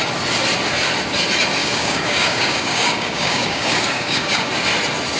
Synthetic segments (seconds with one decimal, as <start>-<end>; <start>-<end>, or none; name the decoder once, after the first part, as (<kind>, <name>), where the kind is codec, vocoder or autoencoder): 1.6-4.5 (codec, DAC)